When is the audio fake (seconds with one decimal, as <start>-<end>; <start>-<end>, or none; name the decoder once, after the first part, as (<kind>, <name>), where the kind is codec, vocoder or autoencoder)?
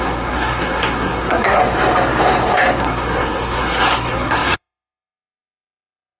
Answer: 0.0-1.6 (codec, SNAC); 2.8-6.2